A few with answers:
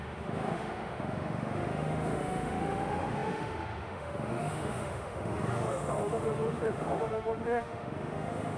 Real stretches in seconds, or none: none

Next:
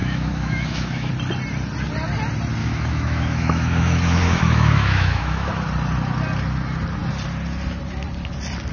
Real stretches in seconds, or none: 1.1-2.6; 5.5-8.7

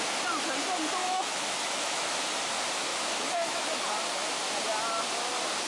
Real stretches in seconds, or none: 0.0-1.0; 2.2-2.9; 3.8-5.7

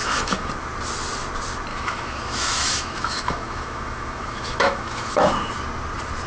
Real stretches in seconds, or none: 0.5-1.7; 5.5-6.3

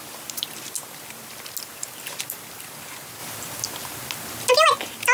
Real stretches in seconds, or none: 0.0-5.1